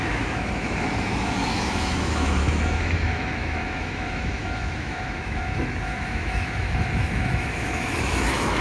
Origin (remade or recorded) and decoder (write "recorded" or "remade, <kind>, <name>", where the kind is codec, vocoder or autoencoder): remade, autoencoder, DAC-VAE